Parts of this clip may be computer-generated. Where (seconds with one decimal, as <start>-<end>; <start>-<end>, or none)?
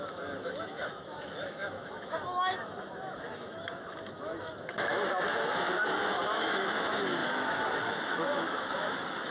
0.0-9.3